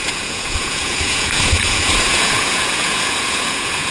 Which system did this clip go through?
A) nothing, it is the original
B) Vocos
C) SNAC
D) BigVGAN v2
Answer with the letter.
B